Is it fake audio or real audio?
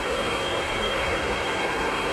fake